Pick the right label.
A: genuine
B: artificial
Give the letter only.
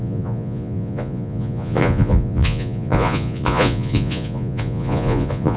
B